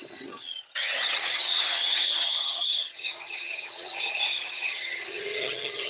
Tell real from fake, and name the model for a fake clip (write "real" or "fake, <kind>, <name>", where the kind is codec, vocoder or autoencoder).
fake, vocoder, HiFi-GAN